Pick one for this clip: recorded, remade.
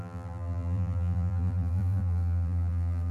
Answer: remade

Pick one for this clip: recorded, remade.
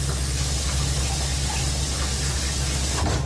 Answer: recorded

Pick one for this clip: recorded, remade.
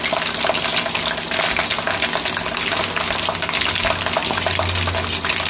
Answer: recorded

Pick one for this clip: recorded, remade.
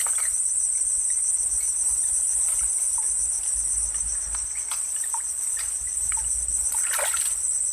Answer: recorded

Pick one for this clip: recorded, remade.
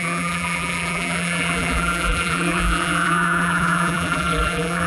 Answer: remade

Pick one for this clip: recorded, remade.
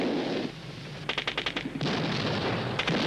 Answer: recorded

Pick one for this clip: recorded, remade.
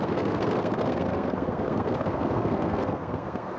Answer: remade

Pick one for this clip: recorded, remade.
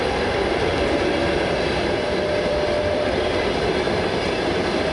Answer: remade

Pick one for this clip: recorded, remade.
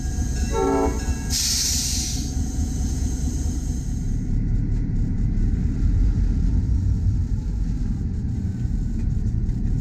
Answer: remade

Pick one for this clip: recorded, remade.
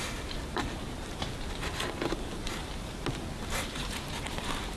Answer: recorded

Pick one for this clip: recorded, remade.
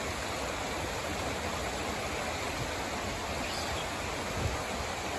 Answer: recorded